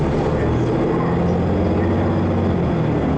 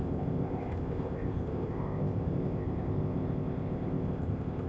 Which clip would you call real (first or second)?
first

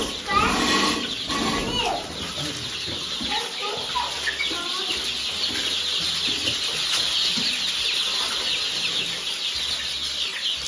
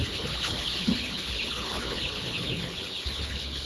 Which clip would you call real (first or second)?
first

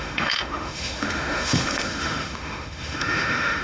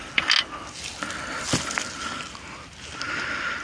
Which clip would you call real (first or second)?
second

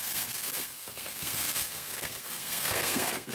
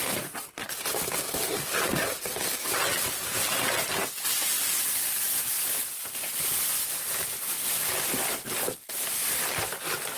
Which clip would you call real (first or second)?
second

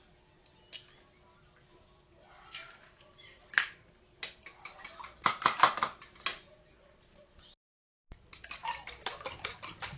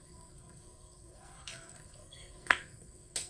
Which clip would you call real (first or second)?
first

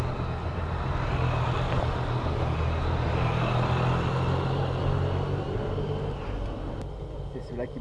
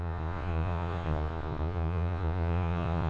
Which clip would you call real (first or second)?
first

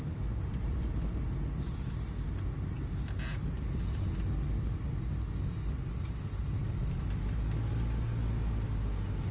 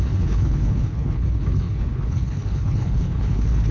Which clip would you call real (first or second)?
first